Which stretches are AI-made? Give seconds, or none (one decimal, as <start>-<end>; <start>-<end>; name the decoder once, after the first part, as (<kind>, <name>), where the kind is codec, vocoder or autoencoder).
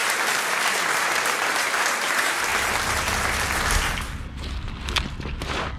0.0-2.5 (vocoder, BigVGAN v2)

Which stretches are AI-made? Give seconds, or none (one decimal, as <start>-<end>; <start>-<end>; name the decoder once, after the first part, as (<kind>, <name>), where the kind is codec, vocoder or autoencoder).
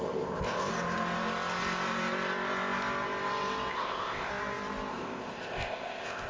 0.0-0.7 (codec, ZipCodec); 3.7-4.3; 4.9-6.3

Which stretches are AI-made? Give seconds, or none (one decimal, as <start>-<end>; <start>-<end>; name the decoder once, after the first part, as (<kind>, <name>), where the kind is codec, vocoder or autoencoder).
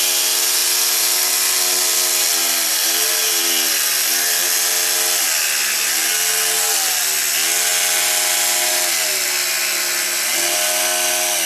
none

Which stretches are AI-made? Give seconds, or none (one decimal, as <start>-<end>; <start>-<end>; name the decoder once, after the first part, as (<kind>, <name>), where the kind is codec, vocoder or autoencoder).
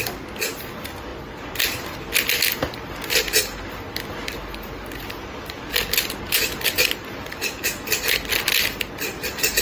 none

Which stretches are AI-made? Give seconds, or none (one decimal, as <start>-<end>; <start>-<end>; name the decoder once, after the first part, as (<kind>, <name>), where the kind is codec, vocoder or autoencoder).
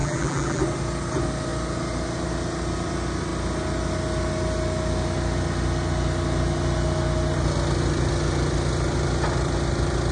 0.0-0.6 (vocoder, BigVGAN v2)